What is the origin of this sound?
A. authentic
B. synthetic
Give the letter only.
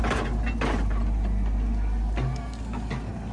A